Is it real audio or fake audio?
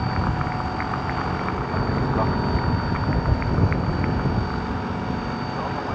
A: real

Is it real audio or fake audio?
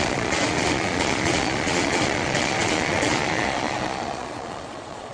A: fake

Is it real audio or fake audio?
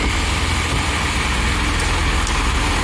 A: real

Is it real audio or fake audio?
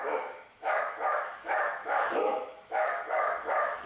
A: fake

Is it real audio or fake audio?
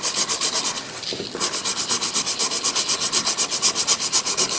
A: real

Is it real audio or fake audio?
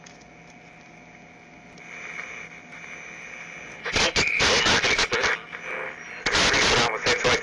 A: real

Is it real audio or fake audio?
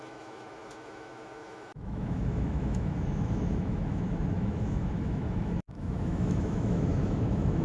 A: fake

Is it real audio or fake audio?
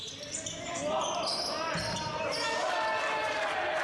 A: real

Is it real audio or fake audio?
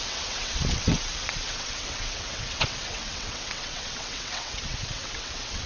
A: fake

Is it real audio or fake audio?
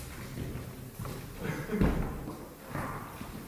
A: real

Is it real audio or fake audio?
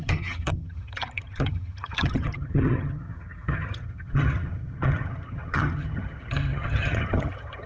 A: fake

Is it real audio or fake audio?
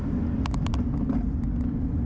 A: real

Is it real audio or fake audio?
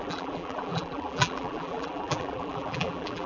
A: fake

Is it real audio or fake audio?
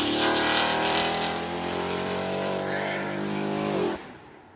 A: fake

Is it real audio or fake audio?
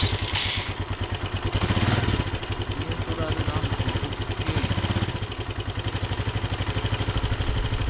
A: real